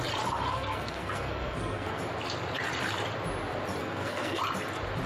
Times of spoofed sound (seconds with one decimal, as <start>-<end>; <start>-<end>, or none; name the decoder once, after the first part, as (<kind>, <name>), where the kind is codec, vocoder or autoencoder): 0.5-2.0 (codec, SNAC); 3.8-4.4